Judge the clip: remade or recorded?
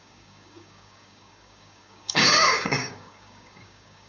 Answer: remade